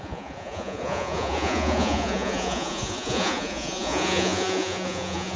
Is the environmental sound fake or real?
fake